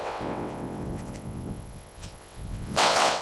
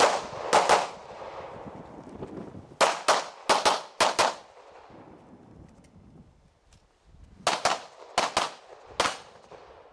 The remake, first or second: first